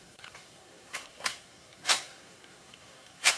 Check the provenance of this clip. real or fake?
fake